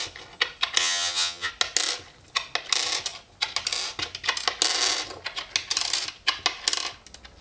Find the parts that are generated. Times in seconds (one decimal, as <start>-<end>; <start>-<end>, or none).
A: 0.8-1.5